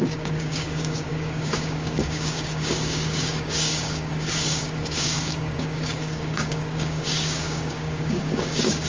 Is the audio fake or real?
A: fake